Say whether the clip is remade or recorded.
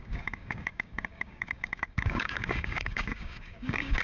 remade